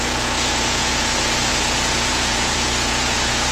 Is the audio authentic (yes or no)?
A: no